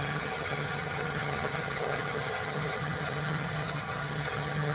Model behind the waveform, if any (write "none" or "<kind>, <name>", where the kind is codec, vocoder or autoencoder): vocoder, HiFi-GAN